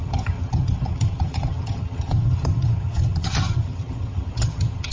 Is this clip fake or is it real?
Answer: fake